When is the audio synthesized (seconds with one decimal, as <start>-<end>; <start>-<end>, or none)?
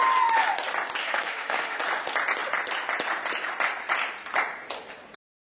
1.0-1.8